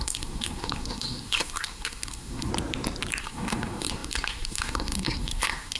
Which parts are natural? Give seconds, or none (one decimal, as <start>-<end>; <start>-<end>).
2.5-3.2